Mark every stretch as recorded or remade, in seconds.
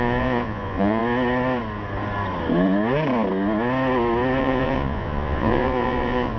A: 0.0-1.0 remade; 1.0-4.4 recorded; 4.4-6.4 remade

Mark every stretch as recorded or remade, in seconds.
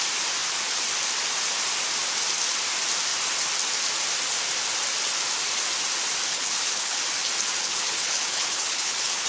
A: 0.0-6.3 recorded; 6.3-7.0 remade; 7.0-7.6 recorded; 7.6-9.3 remade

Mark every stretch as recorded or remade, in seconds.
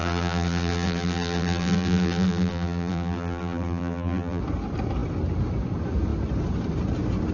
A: 0.0-4.4 remade; 4.4-7.3 recorded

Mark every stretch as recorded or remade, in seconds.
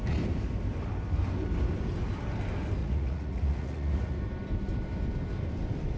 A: 0.0-2.8 recorded; 2.8-4.2 remade; 4.2-6.0 recorded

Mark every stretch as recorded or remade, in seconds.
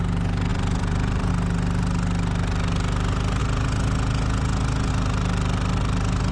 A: 0.0-0.5 recorded; 0.5-1.3 remade; 1.3-3.4 recorded; 3.4-4.9 remade; 4.9-6.3 recorded